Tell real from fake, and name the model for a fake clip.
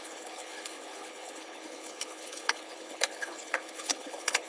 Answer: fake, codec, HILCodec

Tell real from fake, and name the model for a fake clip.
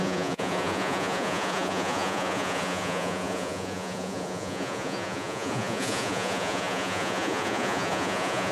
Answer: fake, vocoder, Vocos